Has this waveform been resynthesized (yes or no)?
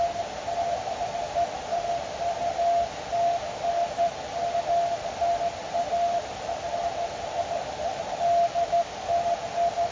no